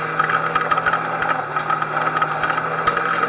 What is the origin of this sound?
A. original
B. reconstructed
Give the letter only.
A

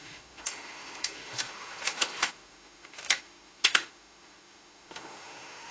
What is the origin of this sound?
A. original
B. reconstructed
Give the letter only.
B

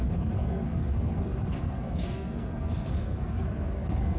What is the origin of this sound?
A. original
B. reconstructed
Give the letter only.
B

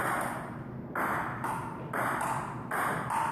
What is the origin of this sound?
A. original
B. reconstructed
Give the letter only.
A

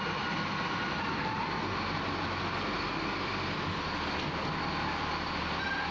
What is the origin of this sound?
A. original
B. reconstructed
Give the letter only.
A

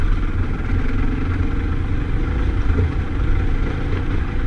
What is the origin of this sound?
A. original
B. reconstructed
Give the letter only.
A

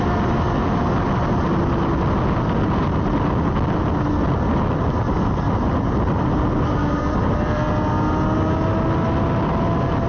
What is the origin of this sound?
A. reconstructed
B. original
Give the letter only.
B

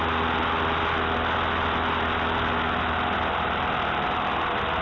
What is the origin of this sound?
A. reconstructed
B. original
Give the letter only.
B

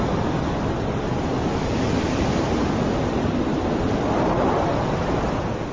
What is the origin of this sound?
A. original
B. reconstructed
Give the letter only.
A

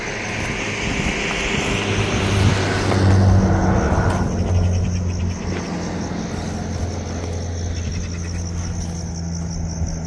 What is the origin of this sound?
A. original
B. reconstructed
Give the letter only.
A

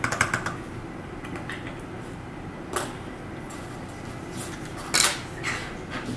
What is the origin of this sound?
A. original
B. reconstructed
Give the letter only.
A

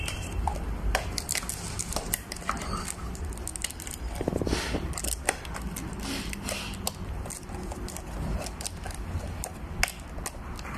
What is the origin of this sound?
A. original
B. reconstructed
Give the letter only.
A